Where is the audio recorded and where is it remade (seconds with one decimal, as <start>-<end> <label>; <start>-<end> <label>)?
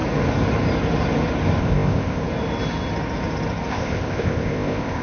0.0-1.6 recorded; 1.6-2.2 remade; 2.2-3.7 recorded; 3.7-5.0 remade